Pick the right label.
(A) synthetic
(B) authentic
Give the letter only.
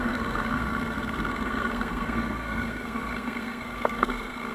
A